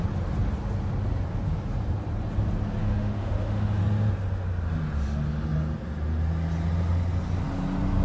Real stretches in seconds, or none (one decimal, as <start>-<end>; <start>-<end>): 0.0-2.8; 3.8-8.0